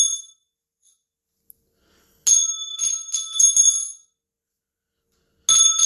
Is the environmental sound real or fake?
real